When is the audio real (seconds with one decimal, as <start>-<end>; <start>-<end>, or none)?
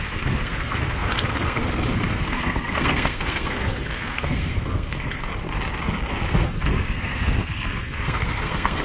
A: 5.3-6.1